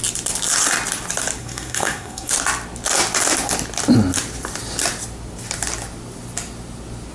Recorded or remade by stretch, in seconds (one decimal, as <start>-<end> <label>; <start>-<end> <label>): 0.0-1.4 recorded; 1.4-2.3 remade; 2.3-7.1 recorded